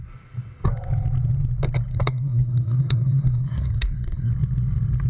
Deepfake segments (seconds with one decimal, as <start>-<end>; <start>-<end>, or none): 1.9-4.3